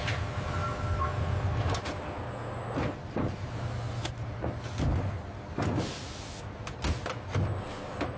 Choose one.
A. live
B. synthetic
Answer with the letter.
A